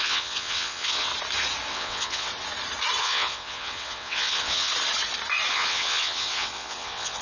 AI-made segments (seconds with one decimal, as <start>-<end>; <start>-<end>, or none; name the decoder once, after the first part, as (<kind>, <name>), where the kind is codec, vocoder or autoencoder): 0.0-1.1 (vocoder, WaveNeXt); 1.7-2.3; 3.0-4.7; 5.5-7.2